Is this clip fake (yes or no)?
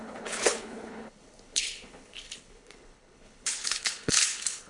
yes